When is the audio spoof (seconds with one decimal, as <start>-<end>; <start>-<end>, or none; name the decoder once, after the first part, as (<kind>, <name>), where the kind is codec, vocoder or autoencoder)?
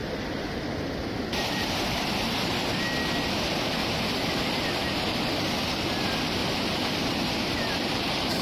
0.0-1.7 (vocoder, BigVGAN v2); 6.4-7.5